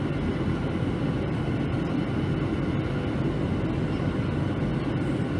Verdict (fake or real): real